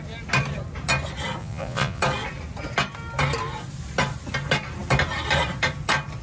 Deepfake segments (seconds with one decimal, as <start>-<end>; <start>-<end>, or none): 1.4-2.0